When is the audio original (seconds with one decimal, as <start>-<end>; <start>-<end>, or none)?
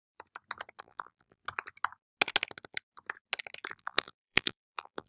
0.0-0.8; 1.4-3.7